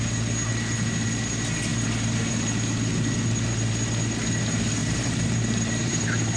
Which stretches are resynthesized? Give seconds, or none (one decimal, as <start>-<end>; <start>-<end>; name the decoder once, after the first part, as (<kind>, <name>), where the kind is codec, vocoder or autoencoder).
4.8-6.0 (vocoder, BigVGAN v2)

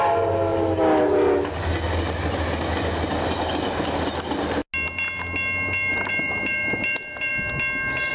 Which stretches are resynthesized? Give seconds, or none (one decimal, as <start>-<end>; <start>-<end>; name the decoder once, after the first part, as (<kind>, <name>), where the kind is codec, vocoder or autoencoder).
0.0-4.6 (vocoder, BigVGAN v2); 5.9-7.3

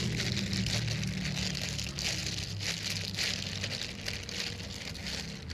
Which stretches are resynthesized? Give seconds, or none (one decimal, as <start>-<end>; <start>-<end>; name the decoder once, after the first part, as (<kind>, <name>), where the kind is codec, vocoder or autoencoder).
none

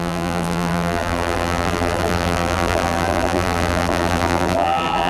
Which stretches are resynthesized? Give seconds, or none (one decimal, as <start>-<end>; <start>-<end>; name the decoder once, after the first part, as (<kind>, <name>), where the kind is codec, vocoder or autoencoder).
0.0-5.1 (vocoder, BigVGAN v2)

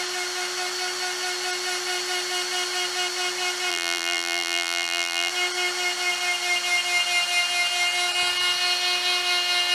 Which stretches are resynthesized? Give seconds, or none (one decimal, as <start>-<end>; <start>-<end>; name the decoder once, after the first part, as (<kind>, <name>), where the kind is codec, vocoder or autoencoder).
3.7-5.3 (vocoder, BigVGAN v2)

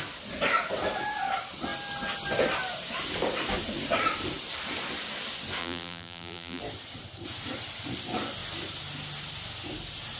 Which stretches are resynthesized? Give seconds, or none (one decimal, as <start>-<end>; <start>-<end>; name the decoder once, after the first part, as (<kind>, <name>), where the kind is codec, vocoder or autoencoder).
5.6-6.6 (vocoder, BigVGAN v2)

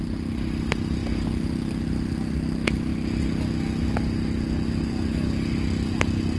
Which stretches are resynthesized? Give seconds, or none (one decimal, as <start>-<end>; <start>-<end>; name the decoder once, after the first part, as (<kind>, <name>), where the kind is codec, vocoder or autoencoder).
none